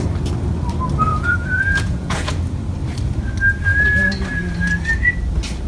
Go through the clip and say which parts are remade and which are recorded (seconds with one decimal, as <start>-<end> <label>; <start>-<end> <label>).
0.0-1.1 recorded; 1.1-2.3 remade; 2.3-5.7 recorded